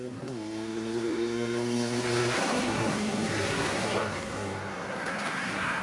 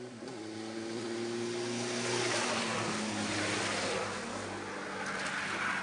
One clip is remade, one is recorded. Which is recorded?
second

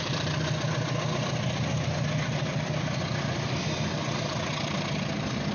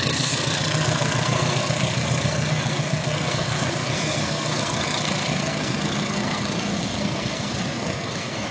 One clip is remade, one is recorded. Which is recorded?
first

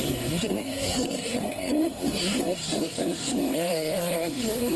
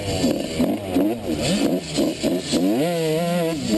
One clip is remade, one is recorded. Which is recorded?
second